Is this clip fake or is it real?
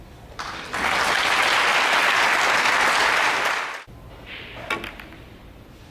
real